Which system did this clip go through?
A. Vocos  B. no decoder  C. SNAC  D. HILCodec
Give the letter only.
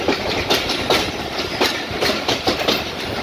B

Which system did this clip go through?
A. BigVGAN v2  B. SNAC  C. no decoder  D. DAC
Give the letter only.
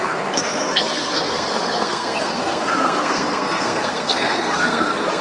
B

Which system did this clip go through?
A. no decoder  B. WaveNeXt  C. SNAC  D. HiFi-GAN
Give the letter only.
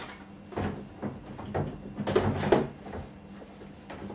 A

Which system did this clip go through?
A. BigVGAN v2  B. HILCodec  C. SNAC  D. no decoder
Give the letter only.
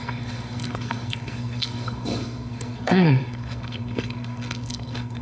C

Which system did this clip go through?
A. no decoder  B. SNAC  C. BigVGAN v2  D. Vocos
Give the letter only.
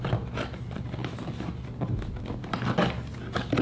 A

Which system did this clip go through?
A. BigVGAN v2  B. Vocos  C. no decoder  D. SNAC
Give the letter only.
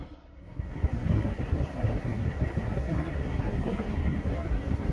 D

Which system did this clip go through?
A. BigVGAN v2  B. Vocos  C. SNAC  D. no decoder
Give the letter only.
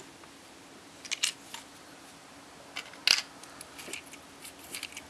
D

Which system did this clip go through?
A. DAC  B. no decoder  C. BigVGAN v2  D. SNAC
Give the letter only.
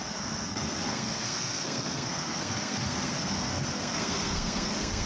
D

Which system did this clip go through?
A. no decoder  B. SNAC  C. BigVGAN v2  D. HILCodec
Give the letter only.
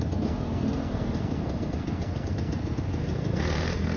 B